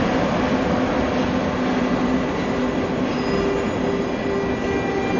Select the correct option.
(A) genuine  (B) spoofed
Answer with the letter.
A